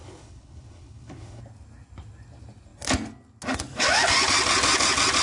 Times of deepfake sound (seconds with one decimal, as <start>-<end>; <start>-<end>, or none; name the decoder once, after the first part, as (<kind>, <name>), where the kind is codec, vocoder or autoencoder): 0.0-1.4 (codec, HILCodec)